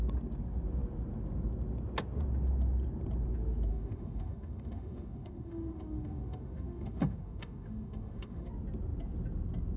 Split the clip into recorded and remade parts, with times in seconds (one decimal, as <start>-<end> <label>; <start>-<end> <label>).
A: 0.0-3.7 recorded; 3.7-8.5 remade; 8.5-9.8 recorded